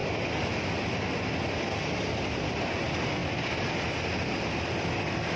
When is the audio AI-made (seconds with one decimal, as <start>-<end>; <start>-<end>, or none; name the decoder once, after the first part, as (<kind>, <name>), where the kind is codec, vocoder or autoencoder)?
none